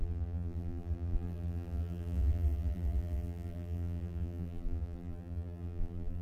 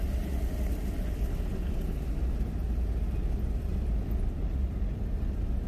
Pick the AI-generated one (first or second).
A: first